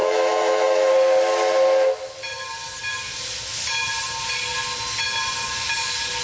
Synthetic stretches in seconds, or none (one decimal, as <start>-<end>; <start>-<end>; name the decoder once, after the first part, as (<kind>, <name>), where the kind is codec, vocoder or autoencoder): 0.0-0.9 (autoencoder, DAC-VAE)